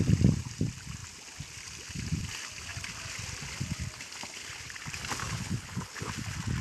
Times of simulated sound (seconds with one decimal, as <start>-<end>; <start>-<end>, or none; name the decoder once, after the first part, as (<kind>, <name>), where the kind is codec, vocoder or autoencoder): 5.2-6.1 (codec, HILCodec)